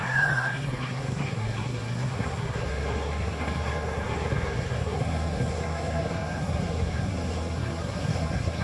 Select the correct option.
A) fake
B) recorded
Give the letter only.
A